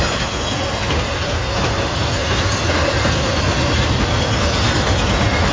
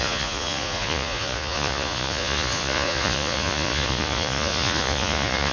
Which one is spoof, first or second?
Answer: second